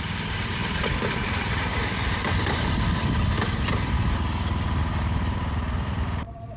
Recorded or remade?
remade